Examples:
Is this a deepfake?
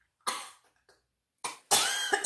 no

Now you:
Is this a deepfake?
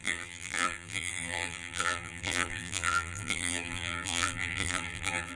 yes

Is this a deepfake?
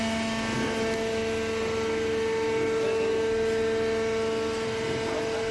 no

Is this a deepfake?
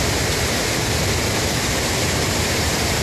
yes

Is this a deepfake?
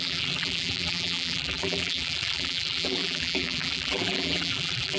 yes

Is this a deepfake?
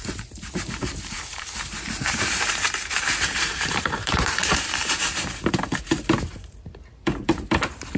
yes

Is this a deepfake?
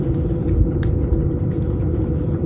yes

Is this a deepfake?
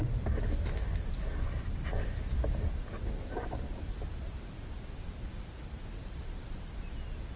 no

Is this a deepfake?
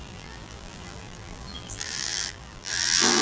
yes